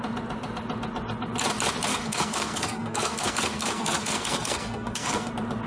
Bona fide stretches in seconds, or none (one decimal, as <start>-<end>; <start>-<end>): 0.0-1.9; 5.3-5.7